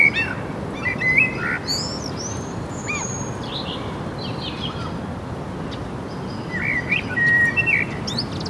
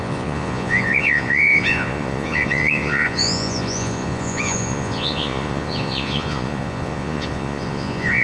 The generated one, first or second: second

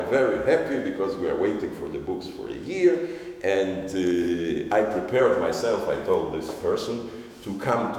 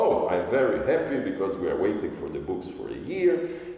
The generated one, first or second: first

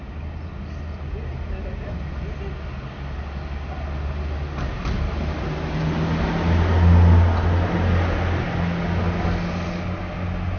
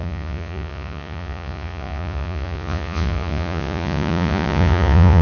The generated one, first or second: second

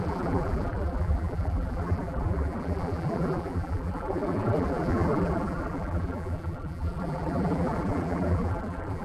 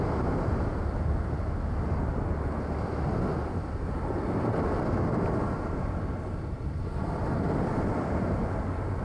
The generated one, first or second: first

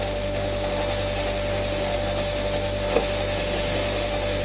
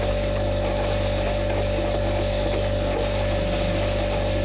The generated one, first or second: first